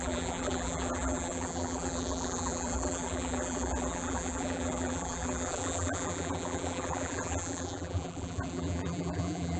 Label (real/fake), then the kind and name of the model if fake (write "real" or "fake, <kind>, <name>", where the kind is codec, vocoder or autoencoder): fake, vocoder, BigVGAN v2